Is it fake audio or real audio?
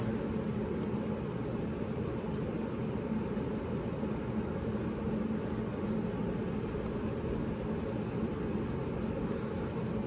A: real